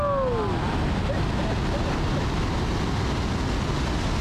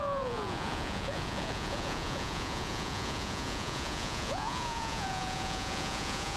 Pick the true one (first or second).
first